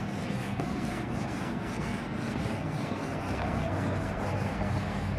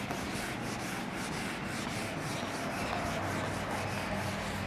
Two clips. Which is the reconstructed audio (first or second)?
first